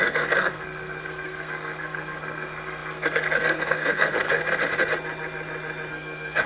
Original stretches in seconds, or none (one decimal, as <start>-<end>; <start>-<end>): 4.4-5.9